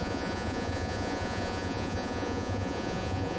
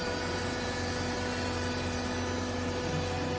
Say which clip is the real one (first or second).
second